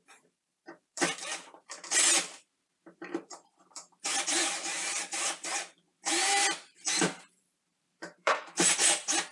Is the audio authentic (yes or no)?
no